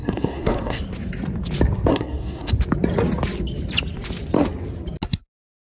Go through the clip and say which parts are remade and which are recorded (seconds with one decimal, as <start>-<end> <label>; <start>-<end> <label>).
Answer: 0.0-0.8 remade; 0.8-1.9 recorded; 1.9-2.5 remade; 2.5-5.6 recorded